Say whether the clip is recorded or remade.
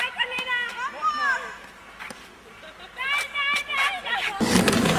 recorded